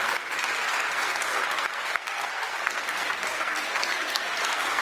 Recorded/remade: remade